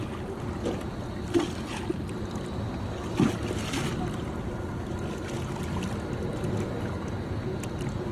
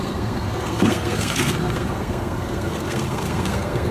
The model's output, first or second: second